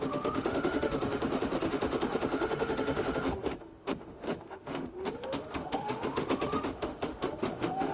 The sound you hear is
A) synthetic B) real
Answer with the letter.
A